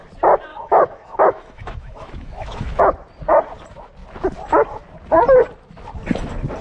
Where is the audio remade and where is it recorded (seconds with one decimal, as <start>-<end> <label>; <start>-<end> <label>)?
0.0-0.5 recorded; 0.5-2.8 remade; 2.8-6.6 recorded